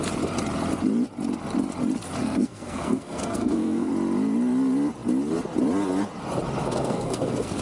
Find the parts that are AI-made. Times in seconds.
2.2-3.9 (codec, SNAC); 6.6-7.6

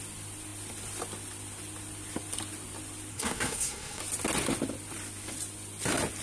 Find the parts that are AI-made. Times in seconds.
3.1-4.0 (codec, SNAC)

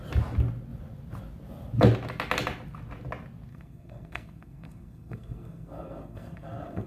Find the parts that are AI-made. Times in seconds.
3.5-6.9 (codec, SNAC)

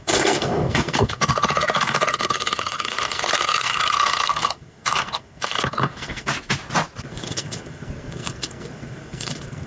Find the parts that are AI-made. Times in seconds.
0.0-6.3 (codec, SNAC); 7.0-9.7

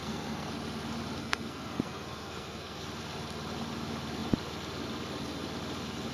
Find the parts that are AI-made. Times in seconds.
0.0-0.5 (codec, SNAC); 1.2-2.8

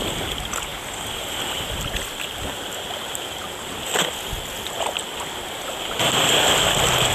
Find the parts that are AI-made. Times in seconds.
none